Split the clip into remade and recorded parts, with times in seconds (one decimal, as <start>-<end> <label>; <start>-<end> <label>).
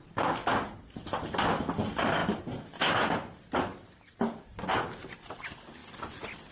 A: 0.0-6.5 recorded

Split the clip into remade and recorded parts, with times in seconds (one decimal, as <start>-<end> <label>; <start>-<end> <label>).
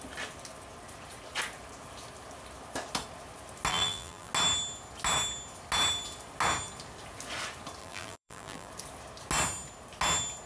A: 0.0-3.7 recorded; 3.7-4.3 remade; 4.3-7.8 recorded; 7.8-8.7 remade; 8.7-10.5 recorded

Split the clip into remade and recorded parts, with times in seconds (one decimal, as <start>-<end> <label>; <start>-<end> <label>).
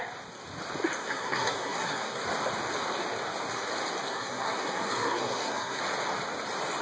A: 0.0-1.0 recorded; 1.0-2.2 remade; 2.2-4.1 recorded; 4.1-5.8 remade; 5.8-6.8 recorded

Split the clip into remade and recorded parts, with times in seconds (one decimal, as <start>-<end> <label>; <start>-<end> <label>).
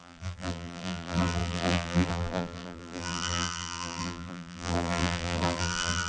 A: 0.0-6.1 remade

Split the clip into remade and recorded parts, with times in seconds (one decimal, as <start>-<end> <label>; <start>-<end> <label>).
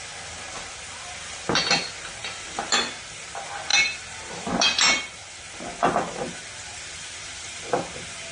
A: 0.0-2.2 recorded; 2.2-2.7 remade; 2.7-3.7 recorded; 3.7-4.5 remade; 4.5-6.7 recorded; 6.7-7.6 remade; 7.6-8.3 recorded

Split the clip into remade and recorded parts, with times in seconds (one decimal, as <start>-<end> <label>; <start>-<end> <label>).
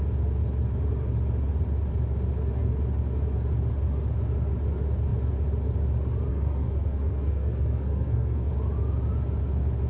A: 0.0-6.3 recorded; 6.3-8.5 remade; 8.5-9.9 recorded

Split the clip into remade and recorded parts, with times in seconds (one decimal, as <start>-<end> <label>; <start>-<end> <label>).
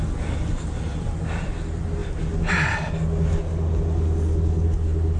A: 0.0-0.9 recorded; 0.9-1.5 remade; 1.5-5.2 recorded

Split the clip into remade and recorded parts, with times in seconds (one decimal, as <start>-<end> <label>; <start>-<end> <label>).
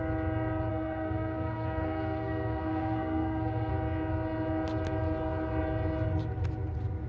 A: 0.0-0.7 recorded; 0.7-3.7 remade; 3.7-7.1 recorded